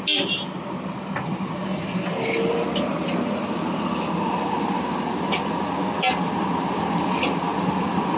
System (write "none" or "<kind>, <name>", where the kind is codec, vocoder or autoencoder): none